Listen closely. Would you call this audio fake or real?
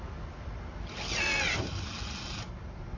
real